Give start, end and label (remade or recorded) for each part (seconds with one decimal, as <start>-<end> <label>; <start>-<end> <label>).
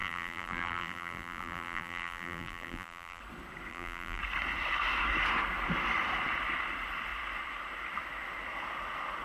0.0-3.2 remade; 3.2-3.7 recorded; 3.7-4.2 remade; 4.2-9.2 recorded